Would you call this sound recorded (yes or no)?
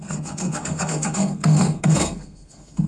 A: no